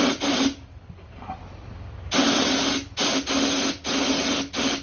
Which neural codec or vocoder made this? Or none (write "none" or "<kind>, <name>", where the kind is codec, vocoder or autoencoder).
none